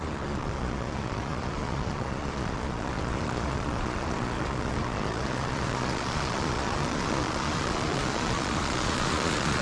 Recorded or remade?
remade